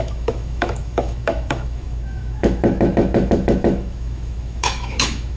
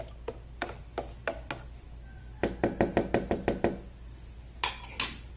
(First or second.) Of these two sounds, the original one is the second